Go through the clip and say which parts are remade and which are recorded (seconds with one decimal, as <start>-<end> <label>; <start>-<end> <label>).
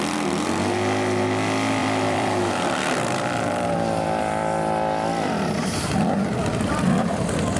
0.0-1.8 recorded; 1.8-6.4 remade; 6.4-7.6 recorded